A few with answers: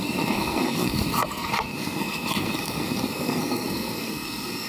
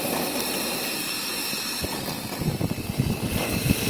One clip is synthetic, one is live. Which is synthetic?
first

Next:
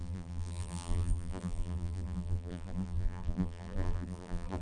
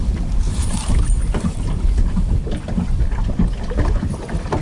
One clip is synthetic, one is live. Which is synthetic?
first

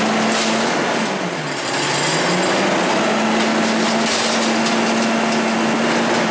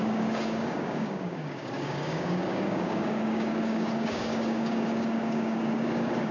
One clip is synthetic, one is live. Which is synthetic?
second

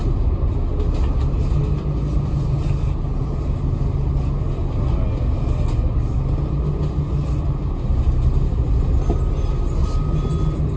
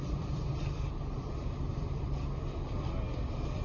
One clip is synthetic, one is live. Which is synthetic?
second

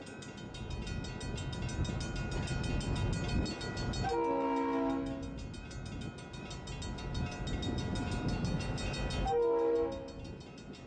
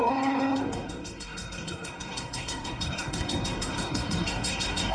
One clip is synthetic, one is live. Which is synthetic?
second